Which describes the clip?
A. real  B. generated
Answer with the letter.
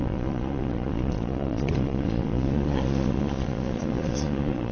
B